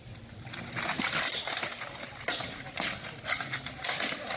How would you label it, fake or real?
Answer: fake